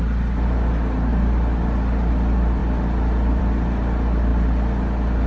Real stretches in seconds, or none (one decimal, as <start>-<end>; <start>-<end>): 0.0-5.3